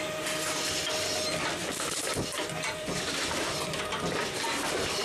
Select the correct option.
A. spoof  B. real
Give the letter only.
B